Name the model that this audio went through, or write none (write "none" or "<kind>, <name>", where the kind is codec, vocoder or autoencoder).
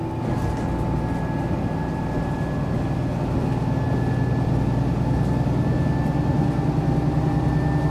none